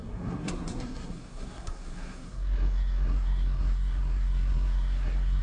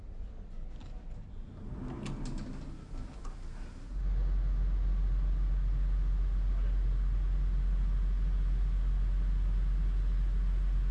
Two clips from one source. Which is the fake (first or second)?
first